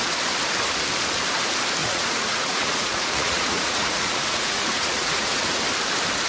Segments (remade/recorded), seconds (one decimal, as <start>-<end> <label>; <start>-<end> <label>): 0.0-1.8 recorded; 1.8-5.6 remade; 5.6-6.3 recorded